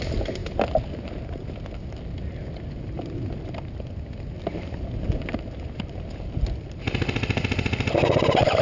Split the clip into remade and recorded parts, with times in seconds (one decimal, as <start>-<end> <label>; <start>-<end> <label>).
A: 0.0-8.6 recorded